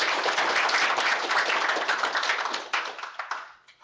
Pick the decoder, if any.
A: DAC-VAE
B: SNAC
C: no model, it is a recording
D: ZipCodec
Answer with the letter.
C